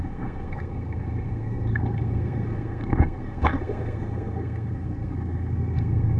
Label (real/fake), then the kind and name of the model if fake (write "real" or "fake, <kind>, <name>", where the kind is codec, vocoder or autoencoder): fake, codec, SNAC